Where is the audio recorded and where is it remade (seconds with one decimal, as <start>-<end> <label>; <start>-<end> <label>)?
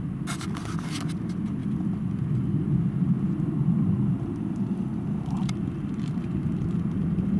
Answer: 0.0-7.4 recorded